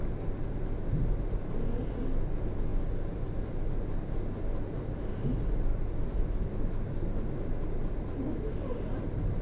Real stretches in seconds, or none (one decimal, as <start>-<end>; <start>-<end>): 0.0-9.4